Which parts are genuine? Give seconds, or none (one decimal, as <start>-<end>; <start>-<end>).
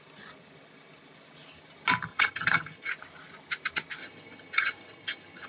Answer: 0.0-2.1; 2.9-4.0